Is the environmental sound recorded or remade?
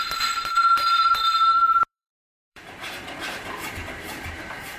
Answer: remade